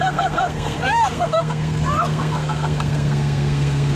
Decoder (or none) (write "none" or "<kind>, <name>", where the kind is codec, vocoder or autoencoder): codec, SNAC